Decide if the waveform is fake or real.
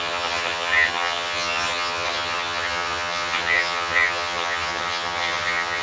fake